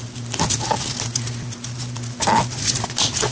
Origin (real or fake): real